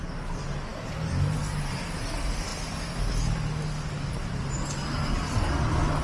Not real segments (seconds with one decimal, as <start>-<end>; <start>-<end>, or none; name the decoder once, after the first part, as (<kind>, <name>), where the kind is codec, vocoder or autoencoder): none